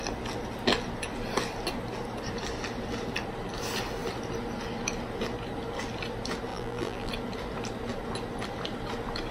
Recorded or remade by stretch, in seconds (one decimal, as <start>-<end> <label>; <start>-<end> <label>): 0.0-6.5 recorded; 6.5-7.1 remade; 7.1-9.3 recorded